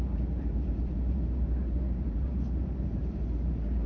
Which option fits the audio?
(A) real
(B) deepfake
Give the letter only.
B